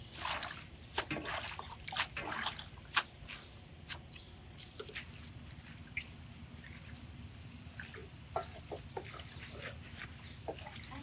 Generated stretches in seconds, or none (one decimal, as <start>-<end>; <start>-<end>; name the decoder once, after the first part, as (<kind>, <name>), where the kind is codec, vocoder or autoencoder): none